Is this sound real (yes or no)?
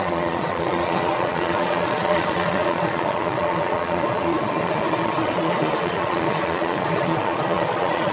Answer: no